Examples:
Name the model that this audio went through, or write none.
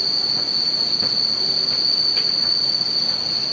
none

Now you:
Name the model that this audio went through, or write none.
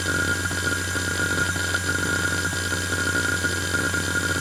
none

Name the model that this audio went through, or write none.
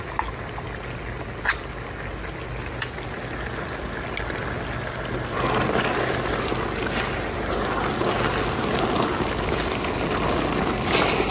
none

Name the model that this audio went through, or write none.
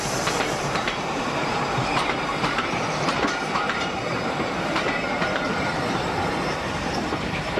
vocoder, BigVGAN v2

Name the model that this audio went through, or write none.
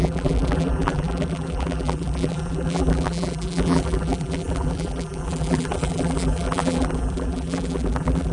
vocoder, BigVGAN v2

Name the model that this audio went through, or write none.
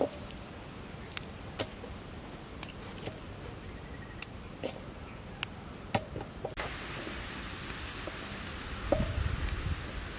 none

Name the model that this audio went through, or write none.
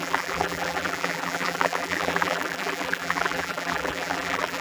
vocoder, BigVGAN v2